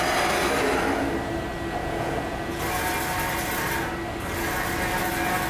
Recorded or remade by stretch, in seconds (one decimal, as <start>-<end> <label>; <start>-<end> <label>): 0.0-1.8 recorded; 1.8-2.6 remade; 2.6-5.5 recorded